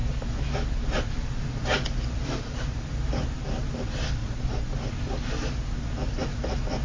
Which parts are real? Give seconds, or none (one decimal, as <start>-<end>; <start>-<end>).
0.0-4.2; 4.7-6.8

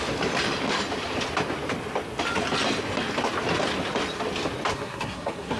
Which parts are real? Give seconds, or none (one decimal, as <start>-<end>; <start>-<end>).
0.0-4.7